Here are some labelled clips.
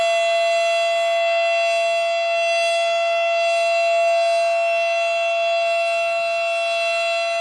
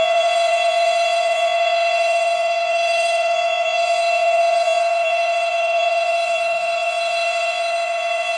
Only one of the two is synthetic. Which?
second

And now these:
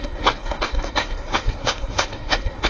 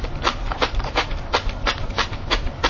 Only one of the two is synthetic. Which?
first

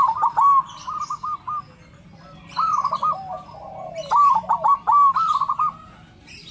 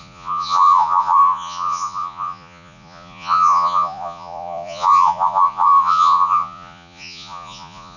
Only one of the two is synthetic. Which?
second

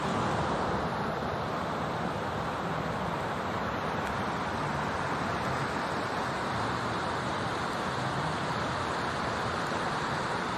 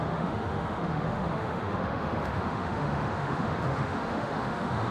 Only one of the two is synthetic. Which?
second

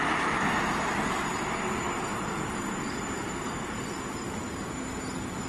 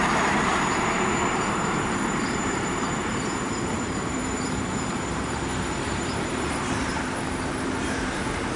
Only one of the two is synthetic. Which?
second